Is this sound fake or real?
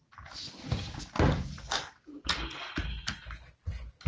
real